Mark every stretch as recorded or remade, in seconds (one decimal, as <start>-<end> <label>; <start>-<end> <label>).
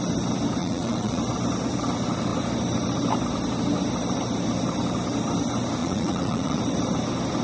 0.0-0.6 recorded; 0.6-1.2 remade; 1.2-5.8 recorded; 5.8-6.6 remade; 6.6-7.4 recorded